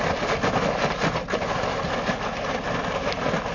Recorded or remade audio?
recorded